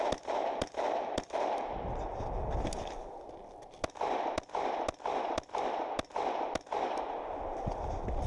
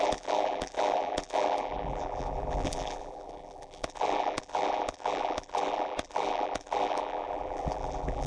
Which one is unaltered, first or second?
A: first